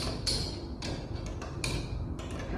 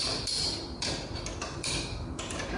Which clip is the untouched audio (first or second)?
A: first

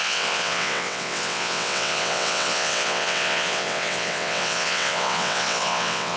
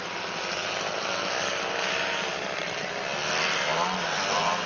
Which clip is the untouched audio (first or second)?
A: second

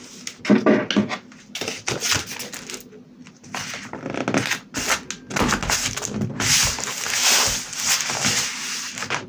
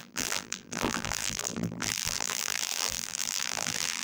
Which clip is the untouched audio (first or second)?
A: first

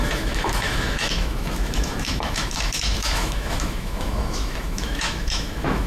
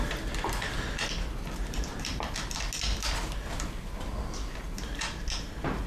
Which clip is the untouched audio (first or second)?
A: second